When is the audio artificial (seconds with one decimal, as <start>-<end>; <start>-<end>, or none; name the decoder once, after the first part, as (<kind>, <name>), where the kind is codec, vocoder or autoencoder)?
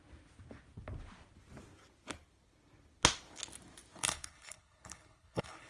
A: 4.0-5.7 (codec, HILCodec)